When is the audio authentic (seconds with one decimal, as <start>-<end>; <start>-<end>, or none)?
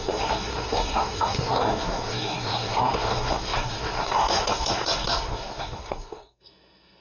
none